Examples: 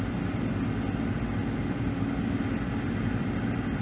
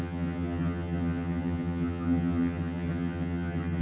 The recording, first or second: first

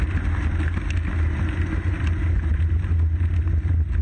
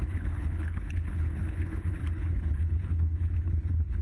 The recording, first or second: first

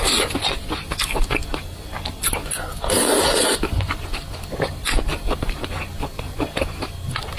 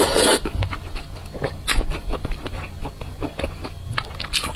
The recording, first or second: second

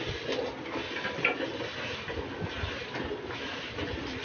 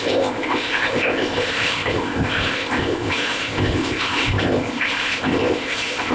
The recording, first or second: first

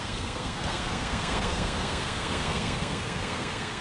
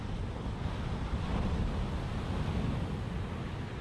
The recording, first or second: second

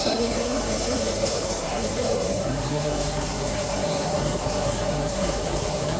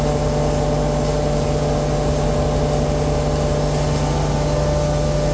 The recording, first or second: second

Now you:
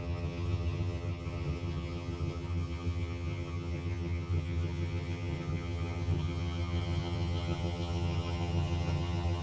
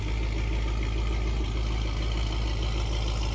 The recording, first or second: second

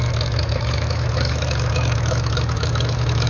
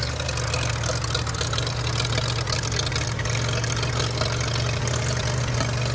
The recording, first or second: second